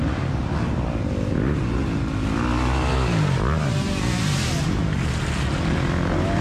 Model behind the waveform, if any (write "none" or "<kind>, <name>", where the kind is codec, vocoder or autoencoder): none